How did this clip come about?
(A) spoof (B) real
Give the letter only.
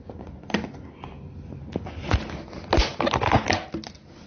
B